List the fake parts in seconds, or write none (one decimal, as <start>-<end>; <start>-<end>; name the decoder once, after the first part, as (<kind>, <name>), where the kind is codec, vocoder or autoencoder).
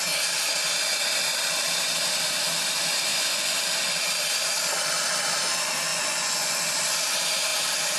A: 3.1-3.6 (vocoder, Vocos); 5.9-6.6